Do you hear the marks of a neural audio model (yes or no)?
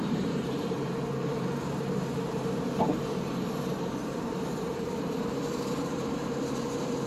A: yes